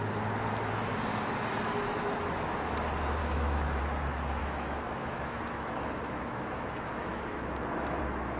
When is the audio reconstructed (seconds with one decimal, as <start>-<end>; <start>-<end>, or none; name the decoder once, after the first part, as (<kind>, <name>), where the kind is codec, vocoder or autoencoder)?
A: 3.2-3.8 (autoencoder, DAC-VAE); 4.4-8.0